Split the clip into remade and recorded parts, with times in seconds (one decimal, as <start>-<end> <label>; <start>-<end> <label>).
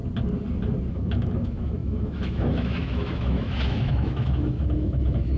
0.0-0.9 recorded; 0.9-5.4 remade